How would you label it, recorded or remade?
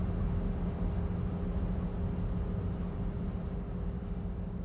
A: recorded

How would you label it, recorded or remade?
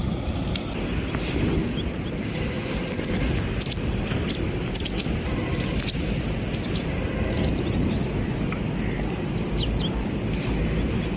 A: recorded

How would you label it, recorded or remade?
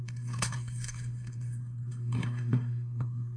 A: remade